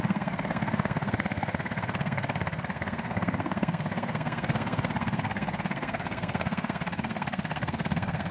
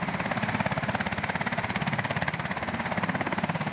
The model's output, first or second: first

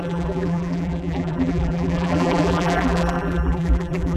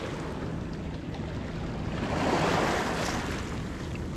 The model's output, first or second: first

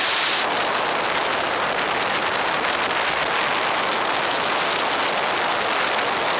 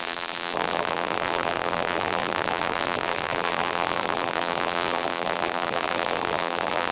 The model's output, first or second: second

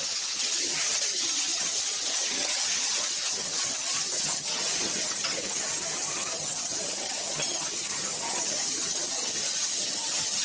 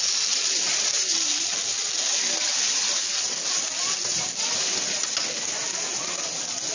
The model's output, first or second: first